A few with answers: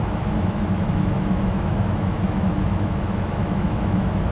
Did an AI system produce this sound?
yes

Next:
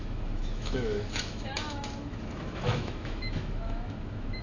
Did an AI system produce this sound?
yes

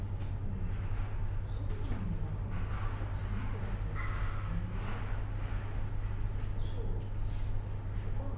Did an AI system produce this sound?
no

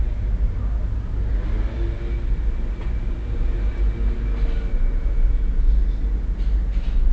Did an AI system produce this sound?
no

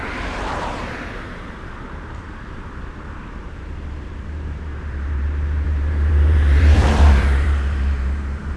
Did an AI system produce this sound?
yes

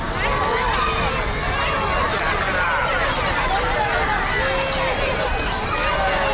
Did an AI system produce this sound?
no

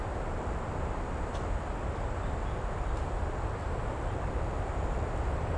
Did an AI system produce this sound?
no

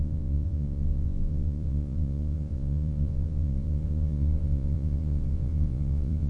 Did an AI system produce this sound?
yes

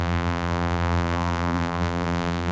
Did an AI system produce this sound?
yes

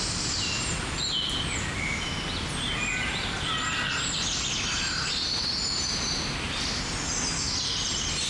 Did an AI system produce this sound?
no